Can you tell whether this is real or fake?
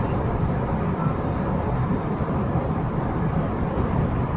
real